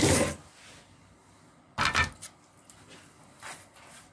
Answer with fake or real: real